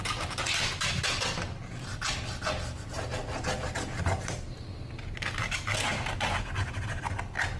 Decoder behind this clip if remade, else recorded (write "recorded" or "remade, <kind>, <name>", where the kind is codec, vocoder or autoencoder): recorded